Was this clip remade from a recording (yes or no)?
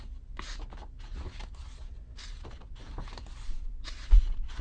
no